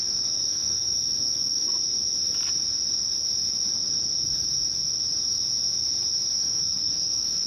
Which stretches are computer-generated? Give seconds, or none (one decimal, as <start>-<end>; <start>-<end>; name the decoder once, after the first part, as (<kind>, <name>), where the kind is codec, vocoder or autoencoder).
0.0-1.8 (codec, SNAC); 6.3-7.5